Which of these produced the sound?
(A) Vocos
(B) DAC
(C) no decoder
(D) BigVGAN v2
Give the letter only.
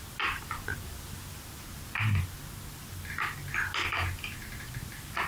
C